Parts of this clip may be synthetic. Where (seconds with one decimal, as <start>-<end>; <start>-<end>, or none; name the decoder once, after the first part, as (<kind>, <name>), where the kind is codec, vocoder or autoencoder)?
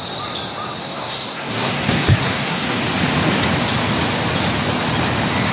0.8-2.8 (codec, SNAC)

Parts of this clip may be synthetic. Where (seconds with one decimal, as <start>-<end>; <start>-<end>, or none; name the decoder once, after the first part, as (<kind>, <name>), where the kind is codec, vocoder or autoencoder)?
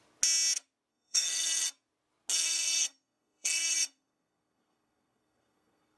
0.9-1.7 (codec, SNAC); 2.3-6.0